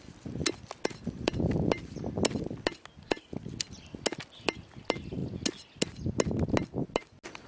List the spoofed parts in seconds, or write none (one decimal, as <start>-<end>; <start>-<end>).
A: none